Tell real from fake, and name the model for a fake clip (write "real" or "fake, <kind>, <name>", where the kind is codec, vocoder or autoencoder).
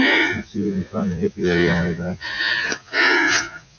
fake, vocoder, Vocos